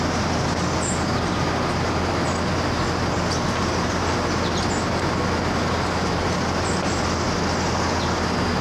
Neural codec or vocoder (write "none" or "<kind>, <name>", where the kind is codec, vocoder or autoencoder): none